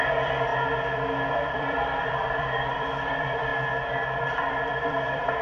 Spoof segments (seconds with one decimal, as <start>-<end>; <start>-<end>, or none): 0.0-0.5; 1.3-3.5; 4.2-5.4